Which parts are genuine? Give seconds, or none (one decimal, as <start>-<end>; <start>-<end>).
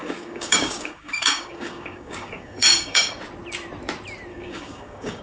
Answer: 3.1-4.3